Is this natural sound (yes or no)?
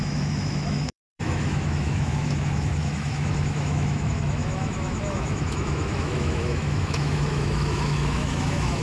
no